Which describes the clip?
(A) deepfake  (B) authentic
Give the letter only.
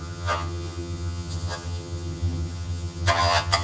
A